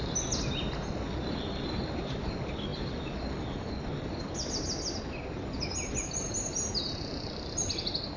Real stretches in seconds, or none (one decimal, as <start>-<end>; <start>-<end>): 0.0-8.2